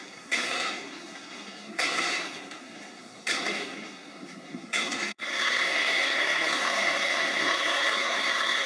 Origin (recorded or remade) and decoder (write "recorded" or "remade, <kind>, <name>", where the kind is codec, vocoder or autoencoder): remade, codec, SNAC